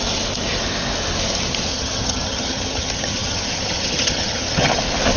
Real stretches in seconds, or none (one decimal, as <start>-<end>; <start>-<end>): 0.0-1.7; 4.8-5.2